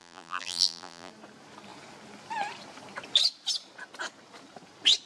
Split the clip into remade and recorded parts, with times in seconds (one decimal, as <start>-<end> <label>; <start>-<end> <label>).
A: 0.0-1.1 remade; 1.1-5.1 recorded